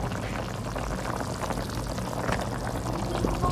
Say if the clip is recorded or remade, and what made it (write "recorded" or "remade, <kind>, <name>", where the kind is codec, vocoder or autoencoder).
recorded